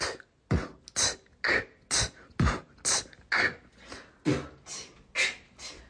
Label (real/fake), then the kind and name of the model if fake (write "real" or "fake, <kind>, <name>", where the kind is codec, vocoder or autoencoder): real